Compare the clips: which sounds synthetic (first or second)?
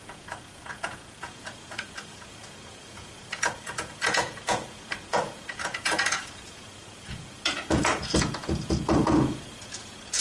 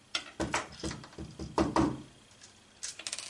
first